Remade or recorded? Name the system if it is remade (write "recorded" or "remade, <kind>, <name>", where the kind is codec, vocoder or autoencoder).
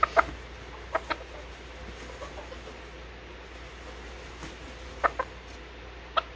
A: recorded